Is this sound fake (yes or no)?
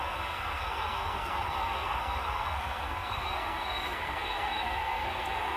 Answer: yes